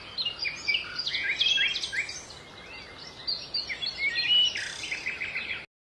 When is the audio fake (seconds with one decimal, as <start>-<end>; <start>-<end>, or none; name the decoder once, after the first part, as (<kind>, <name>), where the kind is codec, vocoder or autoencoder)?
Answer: none